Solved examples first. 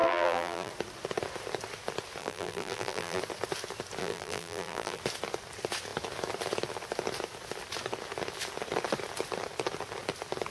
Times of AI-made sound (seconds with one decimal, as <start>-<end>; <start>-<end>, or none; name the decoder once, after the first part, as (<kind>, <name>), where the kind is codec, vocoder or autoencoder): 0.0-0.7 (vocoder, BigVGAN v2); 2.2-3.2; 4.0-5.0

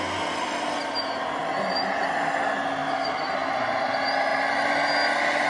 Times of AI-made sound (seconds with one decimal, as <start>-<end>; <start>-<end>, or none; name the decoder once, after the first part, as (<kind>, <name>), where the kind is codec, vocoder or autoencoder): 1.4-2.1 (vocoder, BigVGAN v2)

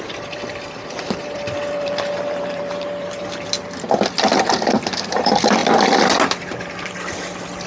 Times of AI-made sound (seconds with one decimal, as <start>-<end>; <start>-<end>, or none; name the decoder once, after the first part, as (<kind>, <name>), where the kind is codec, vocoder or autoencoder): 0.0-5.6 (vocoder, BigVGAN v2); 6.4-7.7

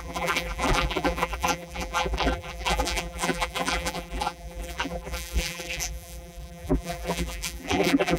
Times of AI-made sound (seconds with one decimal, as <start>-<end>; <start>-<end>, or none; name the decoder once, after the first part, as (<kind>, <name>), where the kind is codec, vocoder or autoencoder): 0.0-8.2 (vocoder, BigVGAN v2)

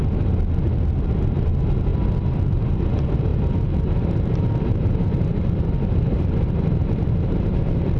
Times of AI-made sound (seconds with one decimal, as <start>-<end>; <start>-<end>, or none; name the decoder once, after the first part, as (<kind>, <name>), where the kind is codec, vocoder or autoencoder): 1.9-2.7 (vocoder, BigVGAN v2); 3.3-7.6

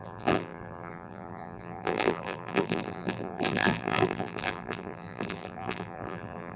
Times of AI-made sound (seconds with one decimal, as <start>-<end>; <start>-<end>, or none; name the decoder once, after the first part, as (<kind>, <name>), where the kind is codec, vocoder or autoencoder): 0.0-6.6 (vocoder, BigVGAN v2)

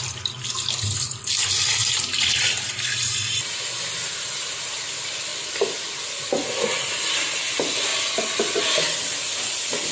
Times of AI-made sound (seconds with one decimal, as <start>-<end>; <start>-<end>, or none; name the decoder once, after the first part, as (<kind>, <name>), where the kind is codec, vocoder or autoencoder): 1.8-4.5 (vocoder, BigVGAN v2); 6.9-7.5

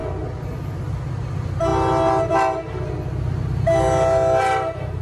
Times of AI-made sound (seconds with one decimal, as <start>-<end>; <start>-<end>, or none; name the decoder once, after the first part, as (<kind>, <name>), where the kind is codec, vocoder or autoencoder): 1.1-1.7 (vocoder, BigVGAN v2); 4.4-5.0